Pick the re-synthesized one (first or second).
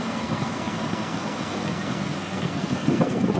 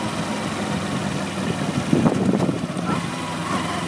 first